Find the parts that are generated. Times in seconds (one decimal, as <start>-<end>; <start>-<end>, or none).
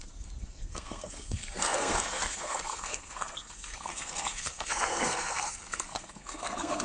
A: 0.0-6.8